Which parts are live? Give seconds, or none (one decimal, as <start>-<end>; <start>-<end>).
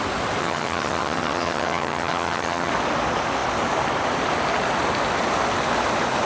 0.0-0.4; 2.7-6.3